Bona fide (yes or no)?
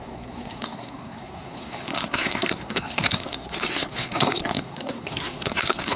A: no